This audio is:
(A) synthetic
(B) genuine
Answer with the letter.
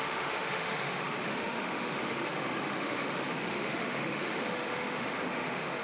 A